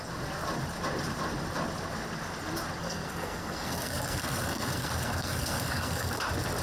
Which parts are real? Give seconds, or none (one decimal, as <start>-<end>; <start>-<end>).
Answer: 0.0-2.8; 6.1-6.6

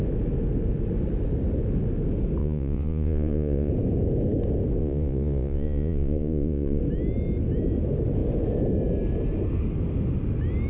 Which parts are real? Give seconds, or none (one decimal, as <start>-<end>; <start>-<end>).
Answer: 0.0-2.4; 3.7-4.8; 6.8-10.7